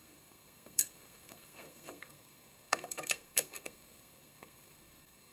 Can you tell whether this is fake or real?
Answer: fake